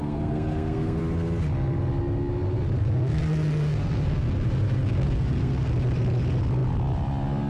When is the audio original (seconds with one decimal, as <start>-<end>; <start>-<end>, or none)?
1.0-2.8; 5.7-7.5